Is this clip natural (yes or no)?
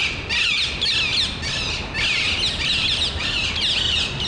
yes